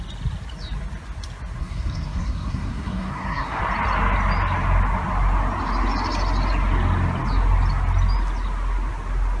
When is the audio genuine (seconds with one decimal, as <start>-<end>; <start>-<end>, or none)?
0.0-1.6; 3.6-9.4